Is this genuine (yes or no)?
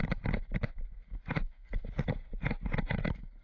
yes